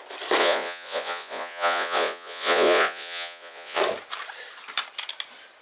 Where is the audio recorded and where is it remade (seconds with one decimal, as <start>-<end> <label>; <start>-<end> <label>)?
0.0-0.4 recorded; 0.4-3.8 remade; 3.8-5.6 recorded